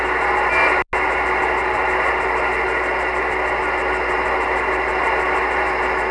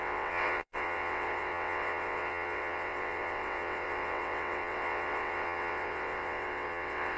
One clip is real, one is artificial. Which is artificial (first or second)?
second